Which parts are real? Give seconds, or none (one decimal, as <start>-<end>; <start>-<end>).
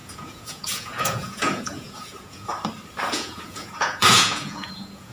2.5-3.1